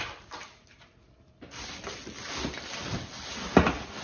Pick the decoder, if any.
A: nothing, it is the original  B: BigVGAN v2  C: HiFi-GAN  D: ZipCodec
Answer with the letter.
A